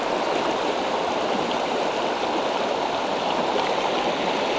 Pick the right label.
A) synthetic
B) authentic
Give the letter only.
B